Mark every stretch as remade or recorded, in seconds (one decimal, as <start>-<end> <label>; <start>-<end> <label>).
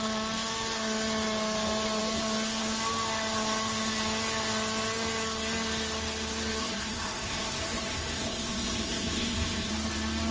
0.0-6.6 recorded; 6.6-9.7 remade; 9.7-10.3 recorded